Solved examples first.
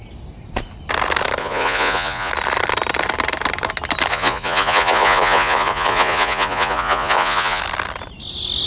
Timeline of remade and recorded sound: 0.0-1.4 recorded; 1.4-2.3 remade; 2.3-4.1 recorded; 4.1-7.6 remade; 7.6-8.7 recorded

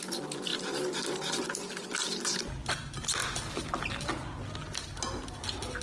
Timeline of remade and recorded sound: 0.0-5.8 recorded

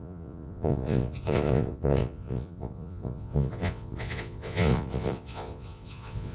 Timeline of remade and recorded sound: 0.0-6.3 remade

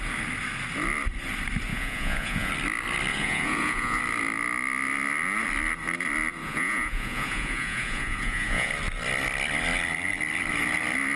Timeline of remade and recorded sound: 0.0-1.7 recorded; 1.7-2.5 remade; 2.5-3.1 recorded; 3.1-4.0 remade; 4.0-6.4 recorded; 6.4-8.7 remade; 8.7-11.2 recorded

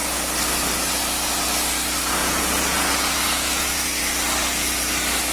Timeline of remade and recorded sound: 0.0-2.2 recorded; 2.2-4.0 remade; 4.0-5.3 recorded

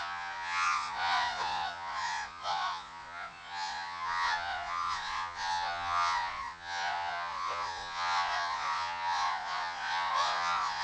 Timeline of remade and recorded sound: 0.0-10.8 remade

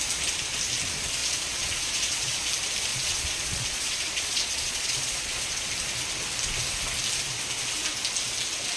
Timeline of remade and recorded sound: 0.0-1.2 recorded; 1.2-2.5 remade; 2.5-2.9 recorded; 2.9-5.7 remade; 5.7-8.8 recorded